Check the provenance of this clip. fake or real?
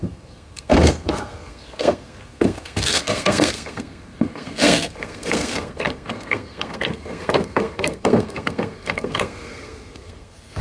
fake